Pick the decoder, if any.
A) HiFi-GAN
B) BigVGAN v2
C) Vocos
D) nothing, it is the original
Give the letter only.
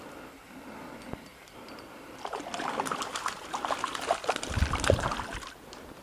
D